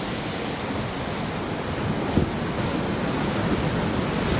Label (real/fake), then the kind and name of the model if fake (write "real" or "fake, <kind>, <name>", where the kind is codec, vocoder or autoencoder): real